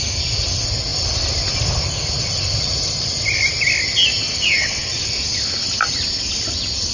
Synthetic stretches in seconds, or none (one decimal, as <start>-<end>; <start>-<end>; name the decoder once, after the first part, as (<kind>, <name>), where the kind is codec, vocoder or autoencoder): 4.6-5.2 (vocoder, WaveNeXt)